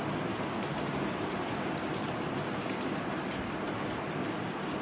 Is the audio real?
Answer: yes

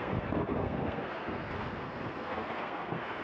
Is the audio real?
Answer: no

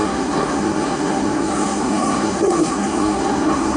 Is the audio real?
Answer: no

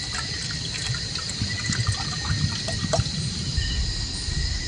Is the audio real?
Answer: yes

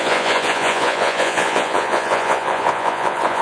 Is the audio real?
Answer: no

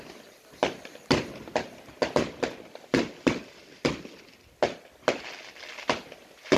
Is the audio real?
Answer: yes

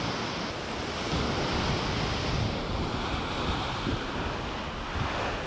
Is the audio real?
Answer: yes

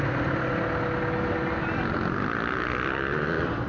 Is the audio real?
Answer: yes